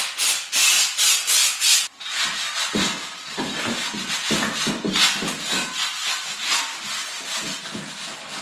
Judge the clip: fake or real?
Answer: real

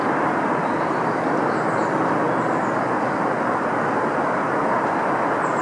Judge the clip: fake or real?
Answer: real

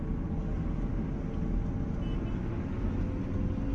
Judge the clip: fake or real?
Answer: real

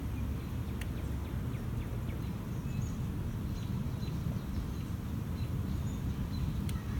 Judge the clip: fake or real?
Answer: real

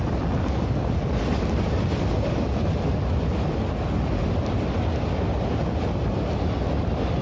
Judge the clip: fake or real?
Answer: real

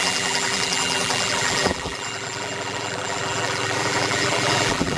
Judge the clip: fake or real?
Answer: fake